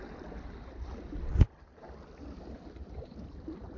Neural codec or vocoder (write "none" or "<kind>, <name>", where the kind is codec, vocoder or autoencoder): none